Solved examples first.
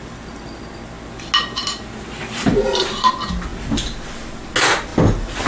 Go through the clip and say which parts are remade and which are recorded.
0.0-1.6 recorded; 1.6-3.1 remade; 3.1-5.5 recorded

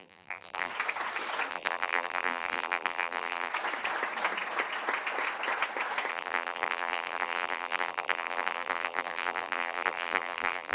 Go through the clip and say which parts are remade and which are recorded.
0.0-0.7 remade; 0.7-1.5 recorded; 1.5-3.5 remade; 3.5-6.1 recorded; 6.1-10.7 remade

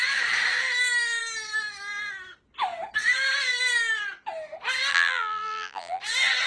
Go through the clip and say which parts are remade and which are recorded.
0.0-4.9 recorded; 4.9-6.0 remade; 6.0-6.5 recorded

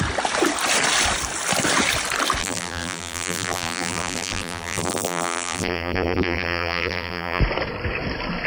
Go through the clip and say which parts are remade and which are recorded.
0.0-2.4 recorded; 2.4-7.4 remade; 7.4-8.5 recorded

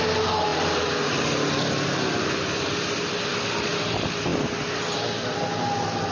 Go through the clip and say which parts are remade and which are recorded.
0.0-6.1 recorded

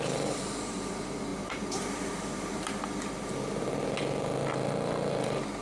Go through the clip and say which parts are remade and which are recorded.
0.0-1.3 recorded; 1.3-2.6 remade; 2.6-5.6 recorded

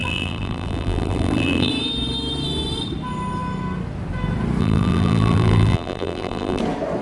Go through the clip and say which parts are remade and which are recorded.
0.0-1.7 remade; 1.7-4.6 recorded; 4.6-6.6 remade; 6.6-7.0 recorded

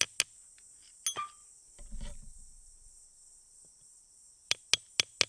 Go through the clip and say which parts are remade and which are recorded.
0.0-1.4 recorded; 1.4-4.6 remade; 4.6-5.3 recorded